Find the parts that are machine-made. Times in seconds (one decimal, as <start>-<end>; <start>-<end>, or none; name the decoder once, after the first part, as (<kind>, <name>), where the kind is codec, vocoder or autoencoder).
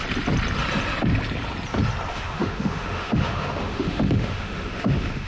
2.1-5.3 (autoencoder, DAC-VAE)